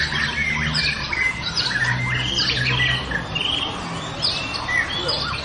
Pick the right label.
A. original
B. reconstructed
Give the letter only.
A